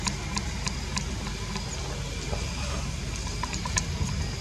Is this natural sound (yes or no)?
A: yes